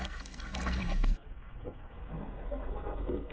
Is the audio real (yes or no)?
no